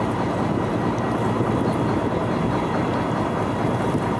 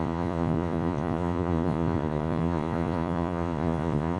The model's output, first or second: second